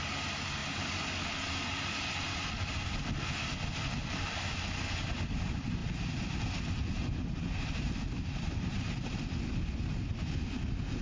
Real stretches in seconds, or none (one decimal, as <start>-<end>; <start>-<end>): 0.0-5.8; 9.4-11.0